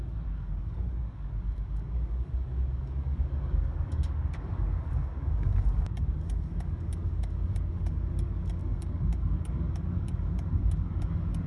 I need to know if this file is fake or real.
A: fake